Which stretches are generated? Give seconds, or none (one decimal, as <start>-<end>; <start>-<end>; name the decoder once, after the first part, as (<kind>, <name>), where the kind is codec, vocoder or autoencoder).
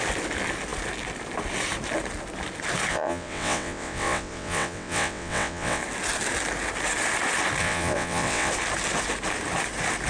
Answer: 2.9-5.8 (vocoder, WaveNeXt); 7.6-8.5